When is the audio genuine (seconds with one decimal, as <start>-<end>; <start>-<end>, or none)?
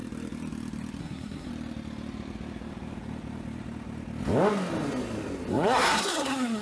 0.0-1.0; 1.5-5.5